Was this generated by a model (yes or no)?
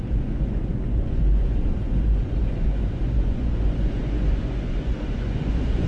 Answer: yes